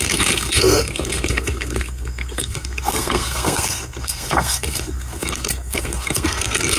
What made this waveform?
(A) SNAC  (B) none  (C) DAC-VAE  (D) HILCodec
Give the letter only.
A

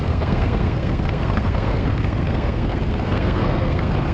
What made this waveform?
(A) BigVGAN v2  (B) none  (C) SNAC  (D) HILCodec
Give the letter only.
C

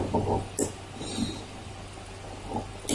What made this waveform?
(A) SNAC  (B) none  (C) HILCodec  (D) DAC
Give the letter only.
B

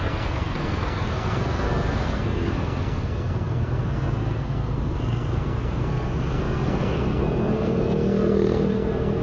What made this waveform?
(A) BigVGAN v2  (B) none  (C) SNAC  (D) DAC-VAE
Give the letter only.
C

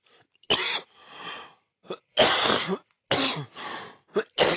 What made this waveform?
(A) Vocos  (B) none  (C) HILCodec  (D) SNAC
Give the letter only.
B